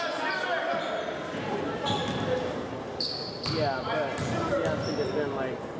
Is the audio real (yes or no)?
yes